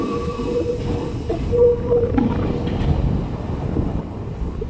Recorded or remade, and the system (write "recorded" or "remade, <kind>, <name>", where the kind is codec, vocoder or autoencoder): remade, vocoder, BigVGAN v2